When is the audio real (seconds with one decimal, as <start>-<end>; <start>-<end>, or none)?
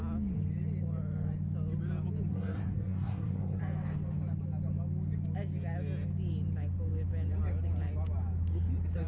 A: 0.0-2.3; 3.6-9.1